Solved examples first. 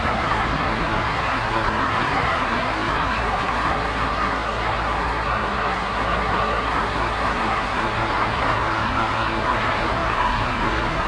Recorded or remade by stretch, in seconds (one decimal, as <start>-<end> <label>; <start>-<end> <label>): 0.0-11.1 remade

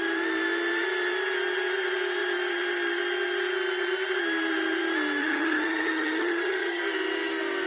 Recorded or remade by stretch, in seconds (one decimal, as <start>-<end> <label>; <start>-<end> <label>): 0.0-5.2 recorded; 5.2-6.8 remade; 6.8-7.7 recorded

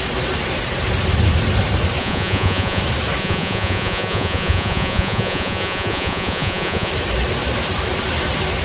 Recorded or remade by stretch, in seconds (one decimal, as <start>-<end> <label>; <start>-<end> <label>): 0.0-2.0 recorded; 2.0-2.8 remade; 2.8-3.2 recorded; 3.2-6.9 remade; 6.9-8.6 recorded